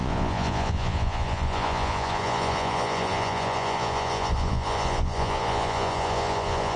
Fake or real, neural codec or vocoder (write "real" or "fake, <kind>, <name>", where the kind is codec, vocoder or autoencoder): fake, vocoder, Vocos